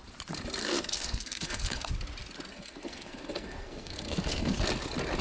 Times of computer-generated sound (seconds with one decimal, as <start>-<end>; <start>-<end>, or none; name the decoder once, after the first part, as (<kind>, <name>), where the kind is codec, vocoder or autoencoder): 0.6-1.9 (codec, SNAC); 2.5-4.6

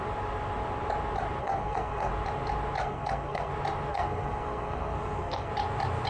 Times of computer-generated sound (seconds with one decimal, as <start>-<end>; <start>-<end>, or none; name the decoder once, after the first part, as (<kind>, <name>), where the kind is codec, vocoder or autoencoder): 1.4-2.1 (codec, SNAC); 2.8-3.5; 3.9-5.5